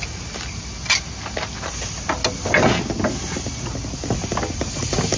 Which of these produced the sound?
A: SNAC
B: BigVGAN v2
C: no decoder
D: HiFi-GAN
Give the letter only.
C